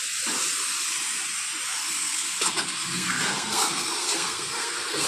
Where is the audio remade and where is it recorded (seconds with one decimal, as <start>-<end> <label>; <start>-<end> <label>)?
0.0-1.8 recorded; 1.8-5.1 remade